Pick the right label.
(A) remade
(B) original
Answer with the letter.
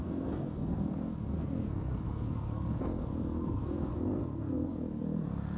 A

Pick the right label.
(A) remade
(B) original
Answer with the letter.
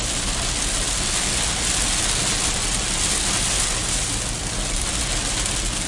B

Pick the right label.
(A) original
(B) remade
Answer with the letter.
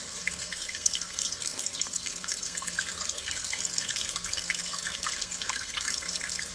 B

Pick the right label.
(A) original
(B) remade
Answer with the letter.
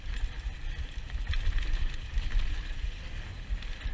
A